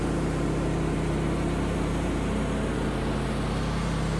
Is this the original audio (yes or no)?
yes